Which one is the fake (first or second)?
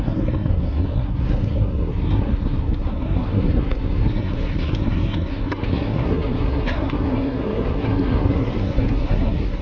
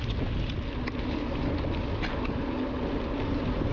first